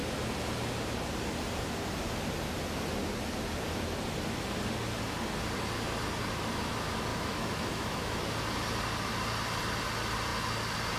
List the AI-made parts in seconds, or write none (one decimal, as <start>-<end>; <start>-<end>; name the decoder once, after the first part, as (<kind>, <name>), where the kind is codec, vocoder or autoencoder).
7.1-8.2 (autoencoder, DAC-VAE)